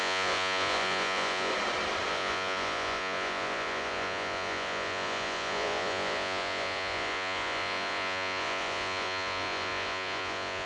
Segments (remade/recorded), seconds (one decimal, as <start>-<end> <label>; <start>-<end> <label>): 0.0-1.5 remade; 1.5-2.1 recorded; 2.1-10.7 remade